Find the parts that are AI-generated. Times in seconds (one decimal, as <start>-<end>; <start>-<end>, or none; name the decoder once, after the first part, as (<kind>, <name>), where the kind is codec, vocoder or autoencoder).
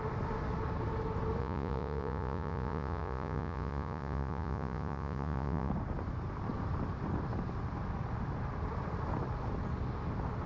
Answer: 1.4-5.7 (vocoder, Vocos)